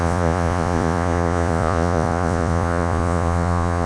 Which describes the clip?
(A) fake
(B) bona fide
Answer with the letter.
A